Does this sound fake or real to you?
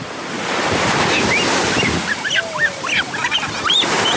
real